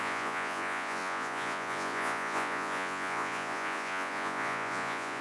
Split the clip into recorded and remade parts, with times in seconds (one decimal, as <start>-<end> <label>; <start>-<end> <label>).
0.0-5.2 remade